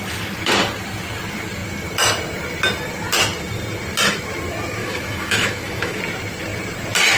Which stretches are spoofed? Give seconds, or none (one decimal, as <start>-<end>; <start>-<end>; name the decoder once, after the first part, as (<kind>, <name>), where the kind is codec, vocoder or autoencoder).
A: 4.8-6.0 (autoencoder, DAC-VAE)

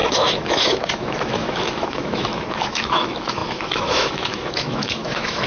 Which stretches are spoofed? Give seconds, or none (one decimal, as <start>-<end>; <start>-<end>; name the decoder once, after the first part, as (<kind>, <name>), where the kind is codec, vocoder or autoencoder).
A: 0.0-5.5 (autoencoder, DAC-VAE)

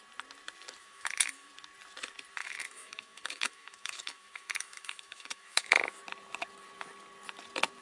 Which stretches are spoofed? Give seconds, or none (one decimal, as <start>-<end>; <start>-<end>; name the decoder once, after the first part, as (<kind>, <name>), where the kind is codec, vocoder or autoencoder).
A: 0.8-1.5 (autoencoder, DAC-VAE); 2.4-6.0

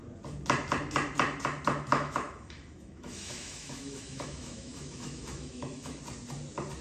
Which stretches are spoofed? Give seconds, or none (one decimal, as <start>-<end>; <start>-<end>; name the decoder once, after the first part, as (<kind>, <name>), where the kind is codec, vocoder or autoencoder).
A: 1.9-6.0 (autoencoder, DAC-VAE)